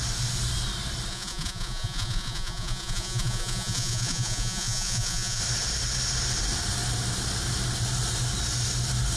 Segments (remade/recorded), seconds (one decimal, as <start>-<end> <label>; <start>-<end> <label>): 0.0-1.1 recorded; 1.1-5.4 remade; 5.4-9.2 recorded